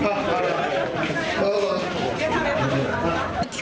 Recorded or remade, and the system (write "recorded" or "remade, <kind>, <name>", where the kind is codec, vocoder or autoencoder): recorded